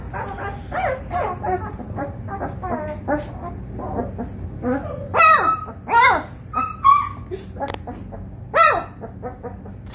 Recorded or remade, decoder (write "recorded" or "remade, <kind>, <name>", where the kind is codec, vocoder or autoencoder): recorded